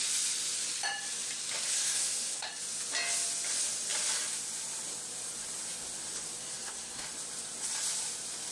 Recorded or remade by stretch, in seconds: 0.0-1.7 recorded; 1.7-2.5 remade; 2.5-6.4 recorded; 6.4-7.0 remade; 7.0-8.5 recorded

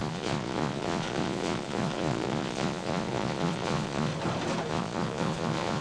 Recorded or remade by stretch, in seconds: 0.0-4.1 remade; 4.1-4.7 recorded; 4.7-5.8 remade